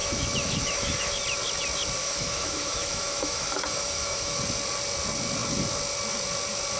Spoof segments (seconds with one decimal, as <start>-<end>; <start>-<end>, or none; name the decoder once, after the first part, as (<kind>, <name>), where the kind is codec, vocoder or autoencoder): 0.0-1.1 (autoencoder, DAC-VAE); 2.0-4.4